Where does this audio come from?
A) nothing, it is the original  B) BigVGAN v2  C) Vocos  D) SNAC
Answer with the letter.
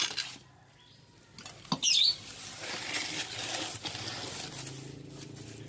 A